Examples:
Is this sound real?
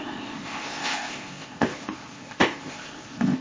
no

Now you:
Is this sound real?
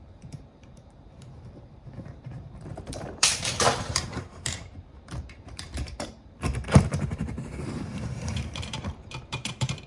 no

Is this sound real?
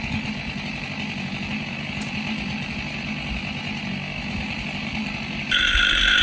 yes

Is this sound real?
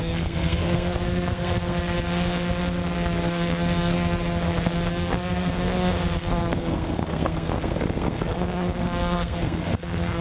no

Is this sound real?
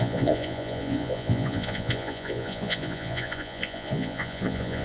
no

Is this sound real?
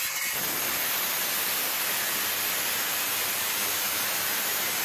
yes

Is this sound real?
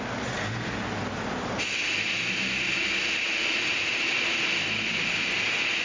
yes